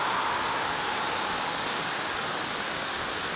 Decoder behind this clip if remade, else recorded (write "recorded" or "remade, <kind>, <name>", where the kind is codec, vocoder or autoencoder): remade, codec, DAC